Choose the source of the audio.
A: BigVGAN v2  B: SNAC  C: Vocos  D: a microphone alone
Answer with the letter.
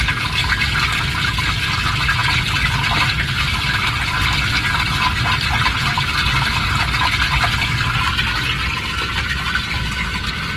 D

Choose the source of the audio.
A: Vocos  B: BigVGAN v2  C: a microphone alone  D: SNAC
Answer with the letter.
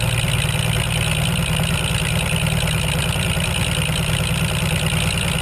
C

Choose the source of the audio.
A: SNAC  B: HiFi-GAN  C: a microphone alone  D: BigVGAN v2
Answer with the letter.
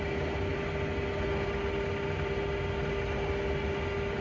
C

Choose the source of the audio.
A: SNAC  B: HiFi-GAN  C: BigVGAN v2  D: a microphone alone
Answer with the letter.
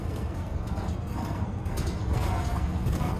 A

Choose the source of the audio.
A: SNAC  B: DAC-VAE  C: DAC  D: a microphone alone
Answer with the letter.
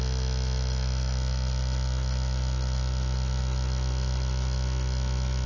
D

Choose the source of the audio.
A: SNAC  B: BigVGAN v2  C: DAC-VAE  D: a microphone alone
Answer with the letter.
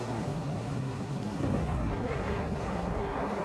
A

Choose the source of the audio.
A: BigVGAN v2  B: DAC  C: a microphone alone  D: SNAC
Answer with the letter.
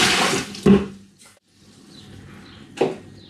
C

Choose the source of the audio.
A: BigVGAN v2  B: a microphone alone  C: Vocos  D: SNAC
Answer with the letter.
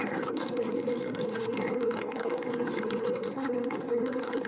D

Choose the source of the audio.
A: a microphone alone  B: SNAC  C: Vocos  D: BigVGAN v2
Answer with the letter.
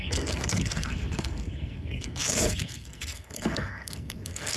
B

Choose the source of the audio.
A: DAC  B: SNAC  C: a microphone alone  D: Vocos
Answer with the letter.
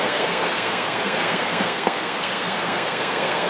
B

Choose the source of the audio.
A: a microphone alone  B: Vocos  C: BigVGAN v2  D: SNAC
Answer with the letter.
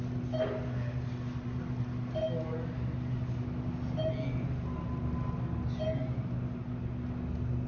A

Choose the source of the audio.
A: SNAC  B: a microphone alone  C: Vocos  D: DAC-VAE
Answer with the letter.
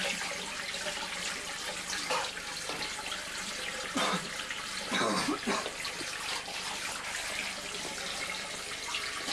B